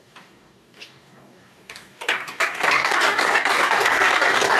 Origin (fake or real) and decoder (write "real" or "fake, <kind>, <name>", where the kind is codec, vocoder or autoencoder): fake, codec, DAC